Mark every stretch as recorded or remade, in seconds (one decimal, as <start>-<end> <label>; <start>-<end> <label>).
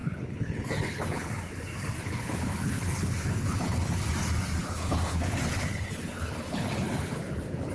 0.0-1.3 remade; 1.3-2.0 recorded; 2.0-4.1 remade; 4.1-4.6 recorded; 4.6-7.7 remade